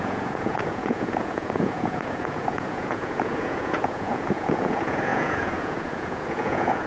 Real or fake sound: fake